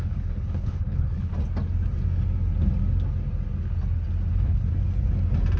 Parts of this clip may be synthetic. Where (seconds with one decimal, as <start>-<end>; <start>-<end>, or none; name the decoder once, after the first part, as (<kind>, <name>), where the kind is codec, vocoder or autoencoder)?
0.0-1.3 (codec, HILCodec); 4.3-4.7

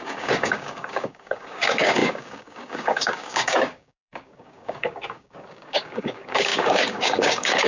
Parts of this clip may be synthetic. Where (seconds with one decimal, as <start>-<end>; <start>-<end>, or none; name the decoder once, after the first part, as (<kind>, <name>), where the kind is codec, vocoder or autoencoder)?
0.0-7.7 (codec, DAC)

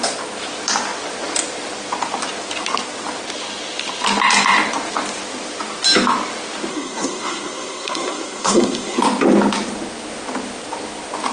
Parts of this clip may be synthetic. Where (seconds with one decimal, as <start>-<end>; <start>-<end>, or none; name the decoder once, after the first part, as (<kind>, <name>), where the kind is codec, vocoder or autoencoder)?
6.7-9.0 (codec, SNAC)

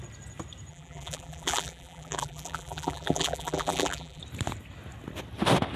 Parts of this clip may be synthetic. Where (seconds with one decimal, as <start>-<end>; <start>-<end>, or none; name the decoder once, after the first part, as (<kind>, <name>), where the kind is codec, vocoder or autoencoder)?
0.7-4.2 (vocoder, BigVGAN v2)

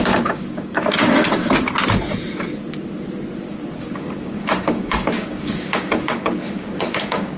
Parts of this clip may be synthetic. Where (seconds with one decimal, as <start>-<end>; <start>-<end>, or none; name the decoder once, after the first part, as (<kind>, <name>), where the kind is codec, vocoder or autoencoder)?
0.0-1.4 (codec, DAC); 3.8-7.4

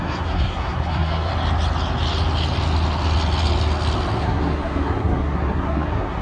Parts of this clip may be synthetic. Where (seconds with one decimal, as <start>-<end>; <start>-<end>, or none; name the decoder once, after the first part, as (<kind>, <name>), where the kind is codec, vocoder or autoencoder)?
0.0-1.3 (codec, SNAC); 4.2-6.2

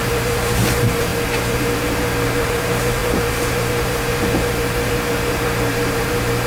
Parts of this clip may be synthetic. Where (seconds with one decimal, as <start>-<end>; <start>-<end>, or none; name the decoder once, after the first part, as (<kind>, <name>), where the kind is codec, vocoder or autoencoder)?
0.0-6.5 (vocoder, BigVGAN v2)